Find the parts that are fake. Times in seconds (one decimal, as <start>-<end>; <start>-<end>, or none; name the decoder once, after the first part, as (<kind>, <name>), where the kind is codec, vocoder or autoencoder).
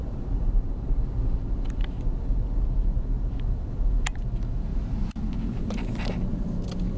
0.0-1.0 (vocoder, BigVGAN v2); 4.7-5.2